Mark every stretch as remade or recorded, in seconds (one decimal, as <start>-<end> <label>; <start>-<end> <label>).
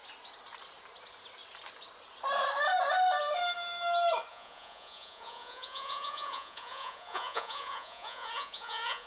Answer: 0.0-4.3 recorded; 4.3-9.1 remade